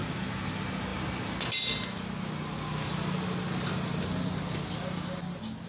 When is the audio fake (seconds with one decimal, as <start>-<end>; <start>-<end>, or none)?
none